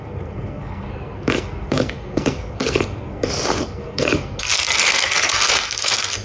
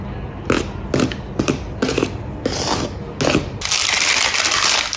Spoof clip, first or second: first